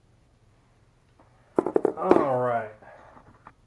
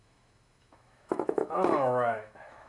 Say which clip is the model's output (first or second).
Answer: second